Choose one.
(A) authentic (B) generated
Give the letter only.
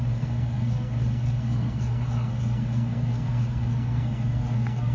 B